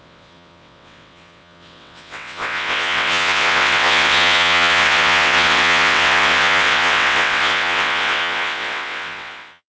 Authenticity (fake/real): fake